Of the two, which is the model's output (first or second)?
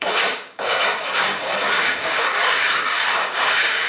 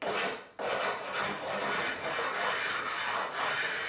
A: first